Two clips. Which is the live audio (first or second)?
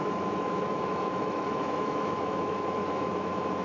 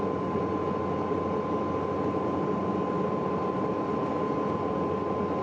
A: second